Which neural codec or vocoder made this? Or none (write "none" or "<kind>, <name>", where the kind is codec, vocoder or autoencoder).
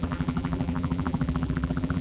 vocoder, BigVGAN v2